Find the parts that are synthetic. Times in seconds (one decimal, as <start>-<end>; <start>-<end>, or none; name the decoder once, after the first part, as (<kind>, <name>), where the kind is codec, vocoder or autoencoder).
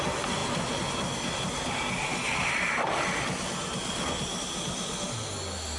none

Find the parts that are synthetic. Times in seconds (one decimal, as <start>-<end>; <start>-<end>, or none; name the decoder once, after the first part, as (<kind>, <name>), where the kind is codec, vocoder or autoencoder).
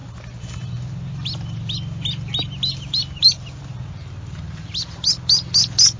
none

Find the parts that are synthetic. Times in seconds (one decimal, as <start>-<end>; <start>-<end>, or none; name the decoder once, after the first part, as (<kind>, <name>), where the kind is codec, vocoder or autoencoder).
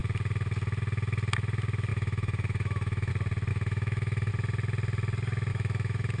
1.9-3.1 (autoencoder, DAC-VAE); 3.5-4.3; 5.5-6.2